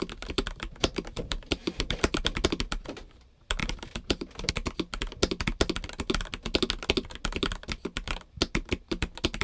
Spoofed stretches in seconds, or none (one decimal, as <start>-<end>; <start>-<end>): 0.8-2.2; 3.6-4.5